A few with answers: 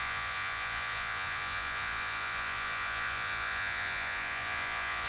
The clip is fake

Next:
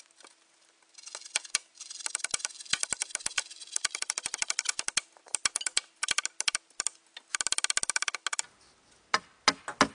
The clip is real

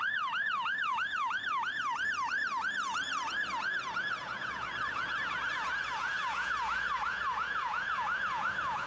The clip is fake